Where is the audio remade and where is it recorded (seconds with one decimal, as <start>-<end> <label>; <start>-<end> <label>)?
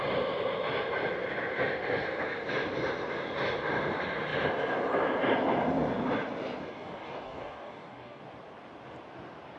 0.0-6.6 recorded; 6.6-8.2 remade; 8.2-9.6 recorded